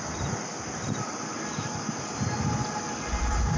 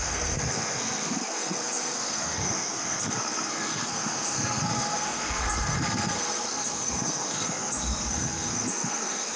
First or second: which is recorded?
first